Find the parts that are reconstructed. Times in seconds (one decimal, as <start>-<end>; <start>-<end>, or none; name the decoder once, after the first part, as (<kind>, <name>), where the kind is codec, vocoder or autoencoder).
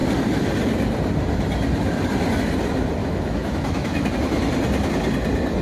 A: 3.0-4.1 (autoencoder, DAC-VAE)